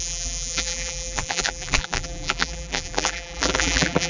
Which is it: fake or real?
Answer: fake